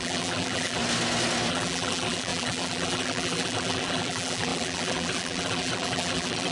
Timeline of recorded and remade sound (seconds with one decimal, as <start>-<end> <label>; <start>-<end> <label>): 0.0-0.8 remade; 0.8-1.5 recorded; 1.5-6.5 remade